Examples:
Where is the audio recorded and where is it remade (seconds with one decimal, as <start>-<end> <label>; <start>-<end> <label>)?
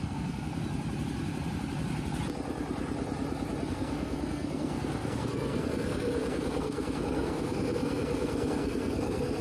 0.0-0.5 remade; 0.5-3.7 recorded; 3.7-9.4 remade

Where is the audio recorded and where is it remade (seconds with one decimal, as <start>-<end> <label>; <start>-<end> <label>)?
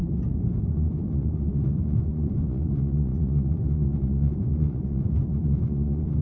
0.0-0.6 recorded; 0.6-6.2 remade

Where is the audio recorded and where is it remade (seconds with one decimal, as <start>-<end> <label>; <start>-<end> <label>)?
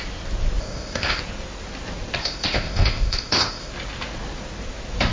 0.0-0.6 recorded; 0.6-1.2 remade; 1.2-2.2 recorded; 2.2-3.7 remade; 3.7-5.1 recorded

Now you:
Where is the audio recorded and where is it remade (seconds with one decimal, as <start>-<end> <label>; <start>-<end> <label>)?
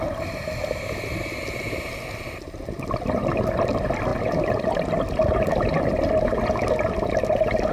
0.0-7.7 recorded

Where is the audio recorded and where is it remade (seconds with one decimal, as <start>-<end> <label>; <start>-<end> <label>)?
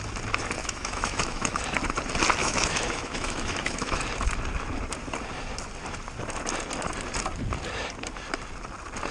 0.0-0.6 recorded; 0.6-1.6 remade; 1.6-2.4 recorded; 2.4-4.0 remade; 4.0-9.1 recorded